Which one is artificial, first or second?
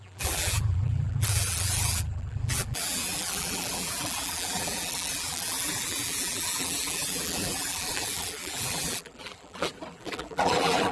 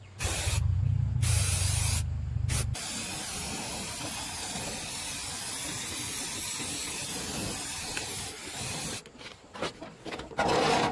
first